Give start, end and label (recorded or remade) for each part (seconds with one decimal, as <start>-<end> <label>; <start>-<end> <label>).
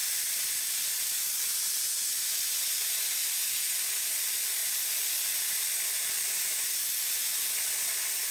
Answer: 0.0-4.6 recorded; 4.6-6.6 remade; 6.6-8.3 recorded